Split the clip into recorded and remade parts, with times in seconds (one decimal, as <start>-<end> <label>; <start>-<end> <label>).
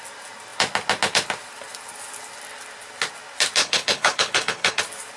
0.0-3.6 recorded; 3.6-4.8 remade; 4.8-5.2 recorded